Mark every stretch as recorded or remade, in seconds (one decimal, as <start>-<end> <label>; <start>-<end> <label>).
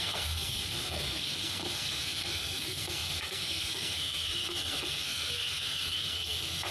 0.0-6.7 remade